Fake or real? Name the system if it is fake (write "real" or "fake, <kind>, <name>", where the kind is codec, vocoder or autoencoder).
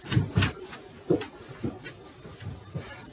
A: real